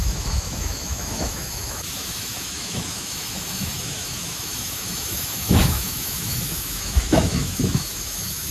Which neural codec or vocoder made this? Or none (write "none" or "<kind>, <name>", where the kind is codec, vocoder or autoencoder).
autoencoder, DAC-VAE